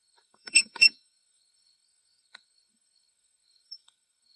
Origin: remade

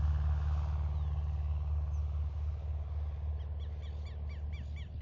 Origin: recorded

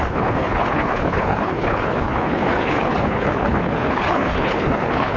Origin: remade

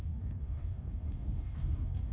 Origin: remade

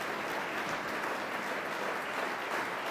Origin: recorded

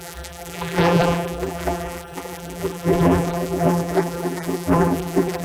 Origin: remade